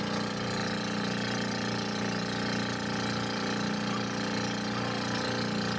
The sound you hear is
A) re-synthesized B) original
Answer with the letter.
B